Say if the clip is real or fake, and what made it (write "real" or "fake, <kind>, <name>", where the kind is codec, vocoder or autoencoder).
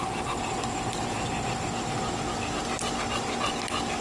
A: real